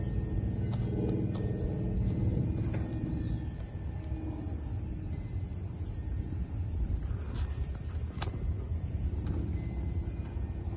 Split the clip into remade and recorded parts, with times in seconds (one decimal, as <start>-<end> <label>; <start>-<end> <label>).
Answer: 0.0-2.3 recorded; 2.3-3.2 remade; 3.2-8.7 recorded; 8.7-9.5 remade; 9.5-10.8 recorded